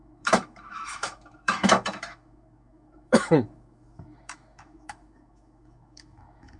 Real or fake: fake